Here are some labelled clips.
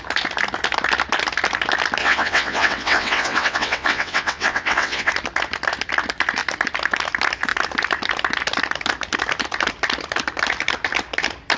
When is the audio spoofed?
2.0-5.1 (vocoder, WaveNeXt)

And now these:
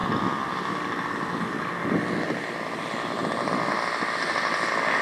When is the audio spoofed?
none

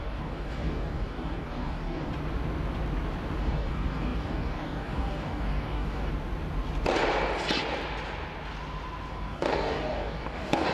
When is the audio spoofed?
0.0-2.1 (codec, DAC); 3.4-6.1; 9.1-10.7

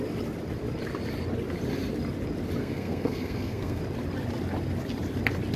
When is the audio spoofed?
2.6-3.8 (codec, SNAC)

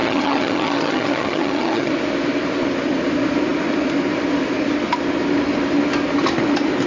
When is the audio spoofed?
0.0-1.9 (vocoder, HiFi-GAN)